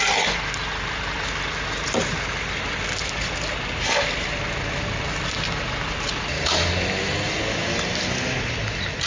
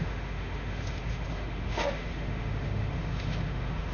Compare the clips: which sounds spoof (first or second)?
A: second